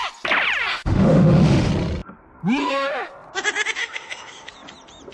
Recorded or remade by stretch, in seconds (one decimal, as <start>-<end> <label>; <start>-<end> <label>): 0.0-0.7 recorded; 0.7-1.7 remade; 1.7-2.6 recorded; 2.6-3.1 remade; 3.1-3.8 recorded; 3.8-4.5 remade; 4.5-5.1 recorded